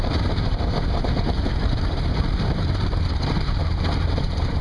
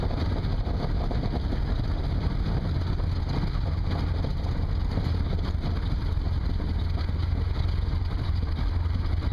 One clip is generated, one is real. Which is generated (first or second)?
first